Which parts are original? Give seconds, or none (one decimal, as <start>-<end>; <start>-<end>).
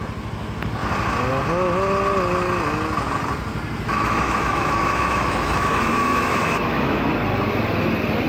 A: 0.0-3.9; 7.1-8.3